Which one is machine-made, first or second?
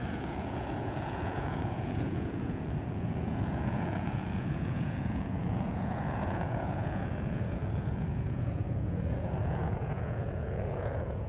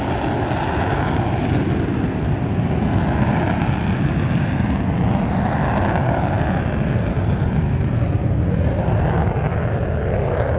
first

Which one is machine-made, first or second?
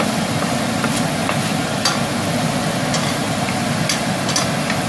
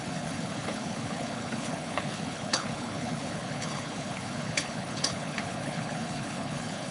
second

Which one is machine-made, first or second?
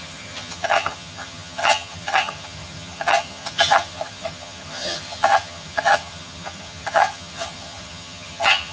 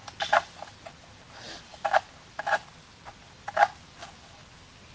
first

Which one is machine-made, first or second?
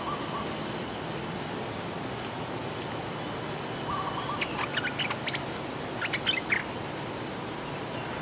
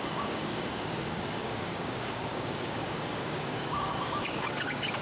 second